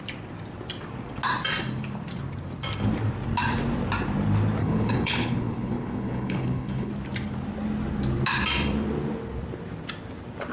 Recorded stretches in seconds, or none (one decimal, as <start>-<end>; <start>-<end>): 0.0-4.6; 6.9-10.5